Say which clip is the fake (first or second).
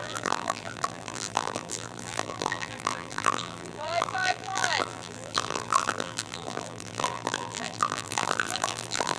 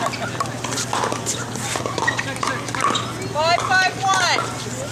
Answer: first